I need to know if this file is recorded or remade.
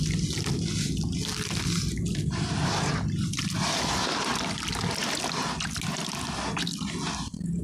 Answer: recorded